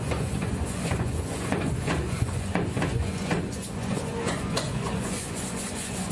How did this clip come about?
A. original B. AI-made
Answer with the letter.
B